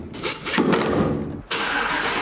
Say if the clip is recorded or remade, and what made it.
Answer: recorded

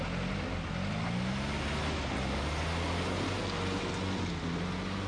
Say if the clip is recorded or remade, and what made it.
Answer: recorded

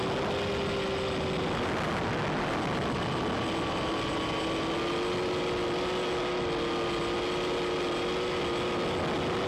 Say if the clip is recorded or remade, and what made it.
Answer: recorded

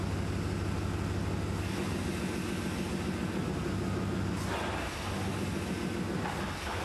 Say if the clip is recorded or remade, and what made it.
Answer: recorded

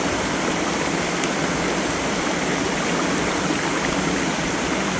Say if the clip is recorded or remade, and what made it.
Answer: recorded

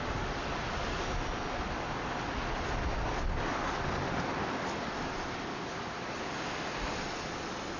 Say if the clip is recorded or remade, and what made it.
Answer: recorded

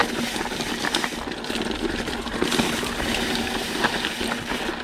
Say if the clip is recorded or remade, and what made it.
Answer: recorded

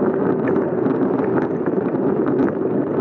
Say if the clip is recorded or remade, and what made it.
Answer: recorded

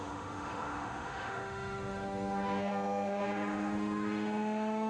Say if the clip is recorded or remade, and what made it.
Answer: remade, autoencoder, DAC-VAE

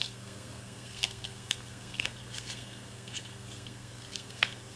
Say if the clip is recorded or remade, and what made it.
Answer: remade, codec, SNAC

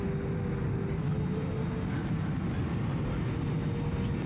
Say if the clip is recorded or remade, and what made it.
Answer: recorded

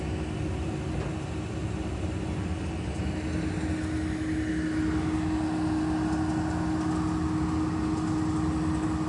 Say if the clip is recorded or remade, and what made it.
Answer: recorded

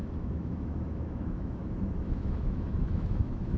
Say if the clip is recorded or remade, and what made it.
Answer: remade, autoencoder, DAC-VAE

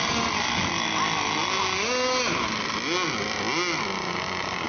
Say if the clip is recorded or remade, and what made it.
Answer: recorded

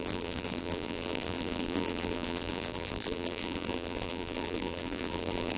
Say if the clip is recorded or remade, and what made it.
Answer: remade, vocoder, BigVGAN v2